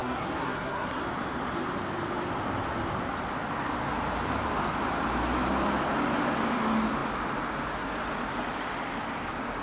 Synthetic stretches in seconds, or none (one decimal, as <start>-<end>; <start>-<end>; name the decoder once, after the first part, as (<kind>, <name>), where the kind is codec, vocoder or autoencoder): 0.0-1.0 (codec, SNAC)